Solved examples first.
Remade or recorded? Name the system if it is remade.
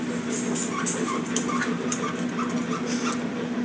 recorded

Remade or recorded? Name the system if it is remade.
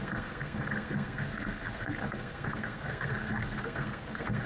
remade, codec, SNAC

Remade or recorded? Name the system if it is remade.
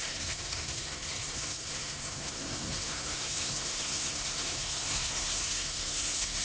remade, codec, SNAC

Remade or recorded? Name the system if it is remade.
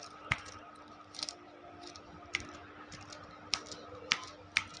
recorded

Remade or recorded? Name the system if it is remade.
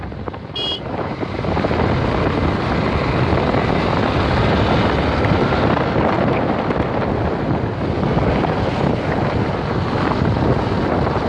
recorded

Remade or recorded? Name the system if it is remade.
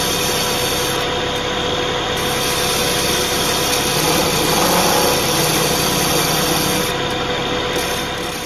recorded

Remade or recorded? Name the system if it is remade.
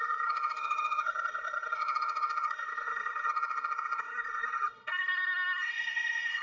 remade, codec, SNAC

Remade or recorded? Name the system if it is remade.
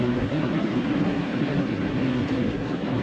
remade, codec, SNAC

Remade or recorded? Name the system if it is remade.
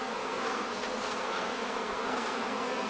remade, codec, SNAC